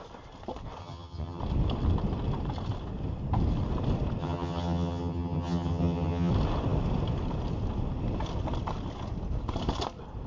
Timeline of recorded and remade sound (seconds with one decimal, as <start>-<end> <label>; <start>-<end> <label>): 0.0-0.8 recorded; 0.8-1.4 remade; 1.4-4.2 recorded; 4.2-6.3 remade; 6.3-10.3 recorded